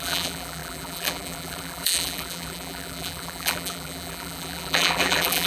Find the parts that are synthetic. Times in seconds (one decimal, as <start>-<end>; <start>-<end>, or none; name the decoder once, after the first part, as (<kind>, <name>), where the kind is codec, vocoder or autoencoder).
0.0-5.5 (vocoder, BigVGAN v2)